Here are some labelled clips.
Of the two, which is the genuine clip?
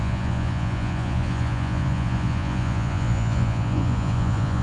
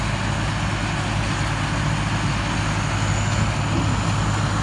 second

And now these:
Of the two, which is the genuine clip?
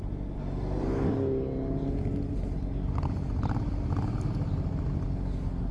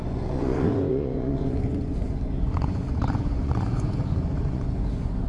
first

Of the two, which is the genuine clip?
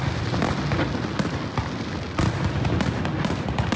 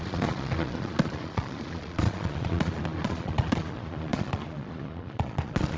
first